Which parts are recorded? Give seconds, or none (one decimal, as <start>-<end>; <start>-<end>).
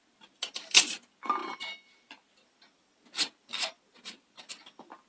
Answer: 0.0-5.1